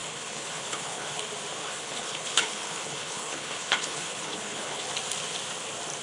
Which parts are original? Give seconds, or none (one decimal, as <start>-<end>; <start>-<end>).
1.2-1.6; 4.9-6.0